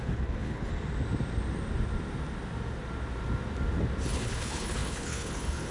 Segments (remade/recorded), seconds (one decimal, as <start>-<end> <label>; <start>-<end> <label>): 0.0-0.7 remade; 0.7-4.1 recorded; 4.1-5.7 remade